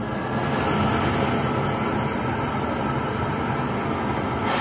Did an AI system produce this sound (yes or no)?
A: no